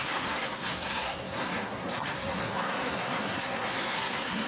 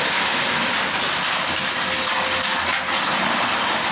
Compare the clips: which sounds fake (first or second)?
first